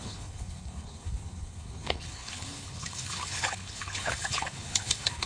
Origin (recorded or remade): remade